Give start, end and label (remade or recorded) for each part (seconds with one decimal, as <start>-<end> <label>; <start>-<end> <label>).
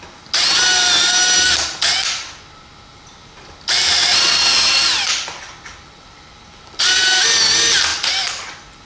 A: 0.0-2.9 recorded; 2.9-6.7 remade; 6.7-8.9 recorded